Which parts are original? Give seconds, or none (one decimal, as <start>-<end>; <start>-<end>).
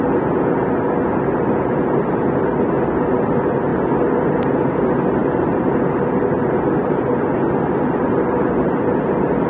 0.0-9.5